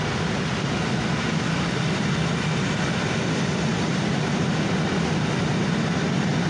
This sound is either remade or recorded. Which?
recorded